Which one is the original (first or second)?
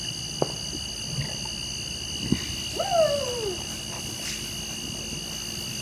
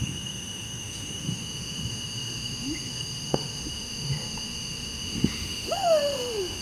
first